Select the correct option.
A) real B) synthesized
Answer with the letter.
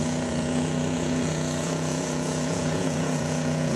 B